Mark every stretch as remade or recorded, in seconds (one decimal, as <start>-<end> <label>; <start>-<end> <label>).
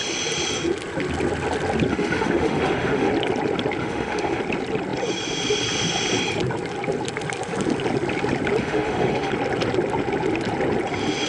0.0-1.9 recorded; 1.9-3.1 remade; 3.1-3.8 recorded; 3.8-4.4 remade; 4.4-8.6 recorded; 8.6-9.3 remade; 9.3-11.3 recorded